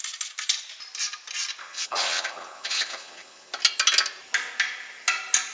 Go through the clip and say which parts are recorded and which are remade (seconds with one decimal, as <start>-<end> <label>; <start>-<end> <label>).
0.0-1.6 recorded; 1.6-3.5 remade; 3.5-5.5 recorded